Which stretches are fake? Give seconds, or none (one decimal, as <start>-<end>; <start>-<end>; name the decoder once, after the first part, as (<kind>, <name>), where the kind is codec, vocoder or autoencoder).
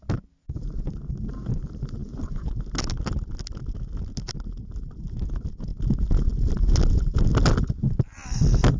none